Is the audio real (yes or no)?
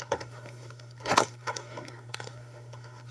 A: no